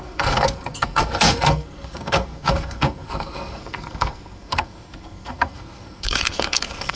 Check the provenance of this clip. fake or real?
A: fake